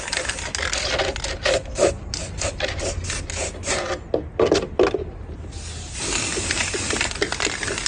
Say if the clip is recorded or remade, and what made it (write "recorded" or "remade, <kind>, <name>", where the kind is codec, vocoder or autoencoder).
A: recorded